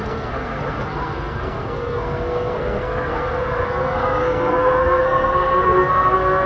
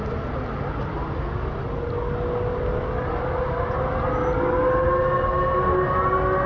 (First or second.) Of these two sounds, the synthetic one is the first